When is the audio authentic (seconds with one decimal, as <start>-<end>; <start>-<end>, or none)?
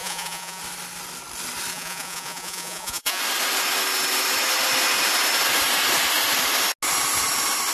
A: 0.6-1.7; 3.2-7.7